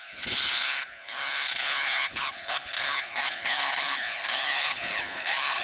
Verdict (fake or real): fake